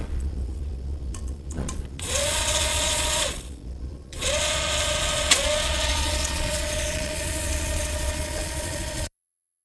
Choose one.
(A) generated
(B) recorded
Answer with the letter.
A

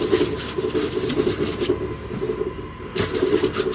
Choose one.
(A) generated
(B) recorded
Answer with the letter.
B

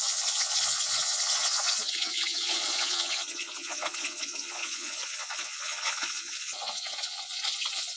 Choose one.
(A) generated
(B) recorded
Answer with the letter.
A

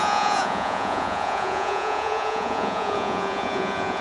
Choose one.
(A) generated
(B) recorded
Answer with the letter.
A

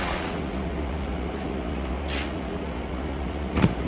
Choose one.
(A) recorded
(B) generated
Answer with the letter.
B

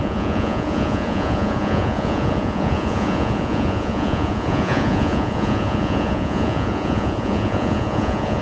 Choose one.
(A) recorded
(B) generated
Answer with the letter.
B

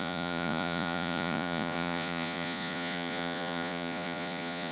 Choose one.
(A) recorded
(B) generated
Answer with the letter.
B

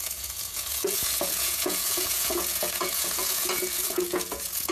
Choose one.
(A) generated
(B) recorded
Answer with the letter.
A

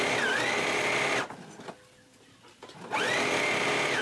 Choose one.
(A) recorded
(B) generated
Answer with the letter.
A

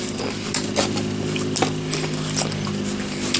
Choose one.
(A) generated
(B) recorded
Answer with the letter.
B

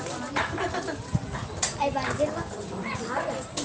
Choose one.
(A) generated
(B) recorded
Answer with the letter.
B